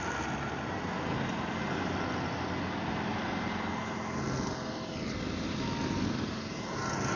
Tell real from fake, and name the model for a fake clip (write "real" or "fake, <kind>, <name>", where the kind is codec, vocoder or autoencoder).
real